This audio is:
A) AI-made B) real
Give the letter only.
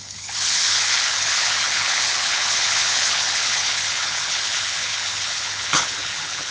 A